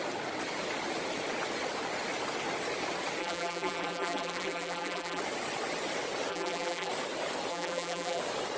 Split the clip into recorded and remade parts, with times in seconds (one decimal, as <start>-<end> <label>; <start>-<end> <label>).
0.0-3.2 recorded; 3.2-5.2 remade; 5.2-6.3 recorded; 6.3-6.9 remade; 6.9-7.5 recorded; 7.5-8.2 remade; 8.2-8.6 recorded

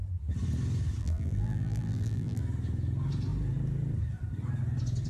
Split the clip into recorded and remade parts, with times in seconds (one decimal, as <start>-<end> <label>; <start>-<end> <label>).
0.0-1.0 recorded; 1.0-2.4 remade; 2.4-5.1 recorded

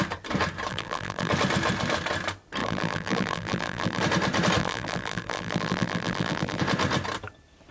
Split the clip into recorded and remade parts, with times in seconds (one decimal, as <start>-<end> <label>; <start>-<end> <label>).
0.0-0.7 recorded; 0.7-1.3 remade; 1.3-2.6 recorded; 2.6-4.0 remade; 4.0-4.6 recorded; 4.6-6.6 remade; 6.6-7.7 recorded

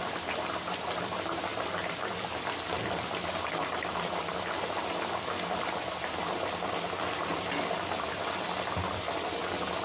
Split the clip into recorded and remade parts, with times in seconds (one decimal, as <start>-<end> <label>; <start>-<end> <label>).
0.0-1.5 recorded; 1.5-3.7 remade; 3.7-9.8 recorded

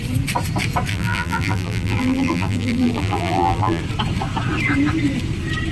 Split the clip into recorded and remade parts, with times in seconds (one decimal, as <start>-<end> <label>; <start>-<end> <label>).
0.0-0.9 recorded; 0.9-3.8 remade; 3.8-5.7 recorded

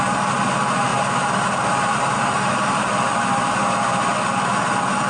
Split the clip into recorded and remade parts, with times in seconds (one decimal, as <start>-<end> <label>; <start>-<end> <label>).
0.0-0.9 recorded; 0.9-2.9 remade; 2.9-5.1 recorded